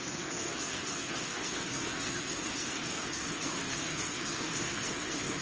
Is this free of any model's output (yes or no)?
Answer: no